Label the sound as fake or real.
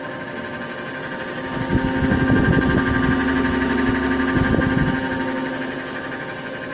real